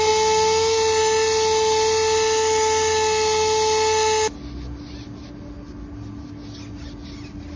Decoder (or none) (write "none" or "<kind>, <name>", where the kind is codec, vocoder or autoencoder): none